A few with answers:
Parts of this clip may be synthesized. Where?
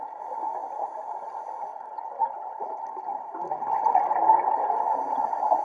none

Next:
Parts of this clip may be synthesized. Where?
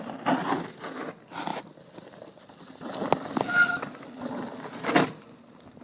none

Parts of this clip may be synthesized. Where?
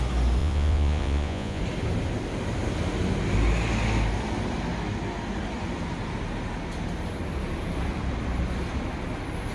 0.4-1.6 (vocoder, Vocos)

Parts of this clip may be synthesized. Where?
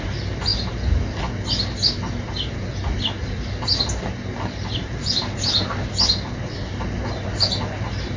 none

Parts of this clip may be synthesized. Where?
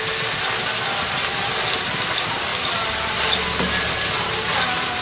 none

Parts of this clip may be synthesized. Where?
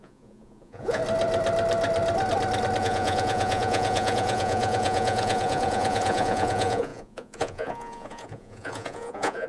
0.0-1.0 (vocoder, Vocos); 2.8-9.5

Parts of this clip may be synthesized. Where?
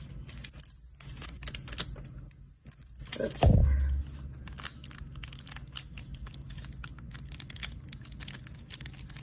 none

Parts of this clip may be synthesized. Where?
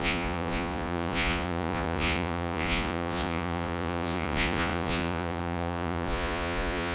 0.0-6.9 (vocoder, Vocos)